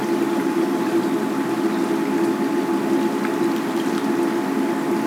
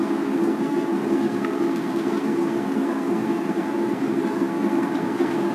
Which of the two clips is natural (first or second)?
first